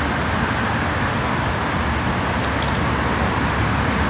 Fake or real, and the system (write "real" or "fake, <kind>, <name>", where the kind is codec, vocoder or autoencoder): real